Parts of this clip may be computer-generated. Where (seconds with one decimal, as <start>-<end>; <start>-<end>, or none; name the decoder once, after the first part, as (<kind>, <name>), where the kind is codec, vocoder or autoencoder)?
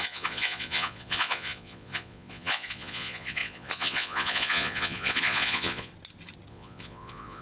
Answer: 0.0-5.9 (vocoder, Vocos); 6.5-7.4